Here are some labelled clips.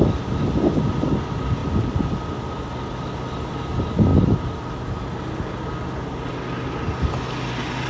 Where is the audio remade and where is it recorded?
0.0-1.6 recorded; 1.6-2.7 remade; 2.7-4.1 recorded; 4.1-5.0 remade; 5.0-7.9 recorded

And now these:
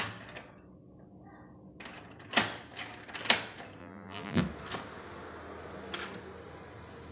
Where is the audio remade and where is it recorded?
0.0-3.8 recorded; 3.8-4.4 remade; 4.4-7.1 recorded

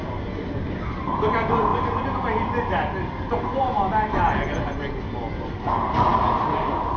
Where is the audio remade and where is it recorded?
0.0-7.0 recorded